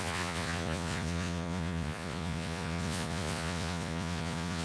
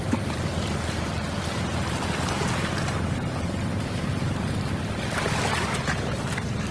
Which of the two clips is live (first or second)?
second